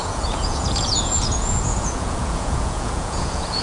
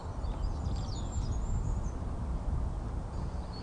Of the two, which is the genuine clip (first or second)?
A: second